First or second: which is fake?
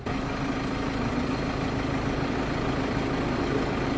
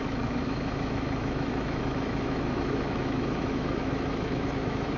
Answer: second